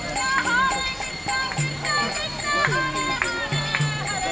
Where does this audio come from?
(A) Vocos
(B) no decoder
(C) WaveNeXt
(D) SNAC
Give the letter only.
B